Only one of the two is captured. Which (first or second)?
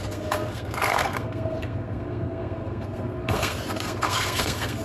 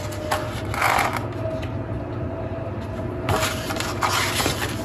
second